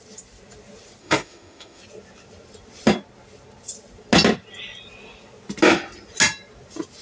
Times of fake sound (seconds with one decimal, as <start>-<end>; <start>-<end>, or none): 1.0-1.8